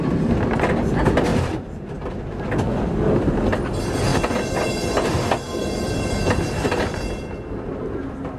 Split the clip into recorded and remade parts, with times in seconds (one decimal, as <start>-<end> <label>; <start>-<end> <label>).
0.0-8.4 recorded